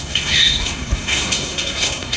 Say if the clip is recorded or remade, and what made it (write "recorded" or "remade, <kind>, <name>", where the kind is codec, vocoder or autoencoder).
remade, codec, SNAC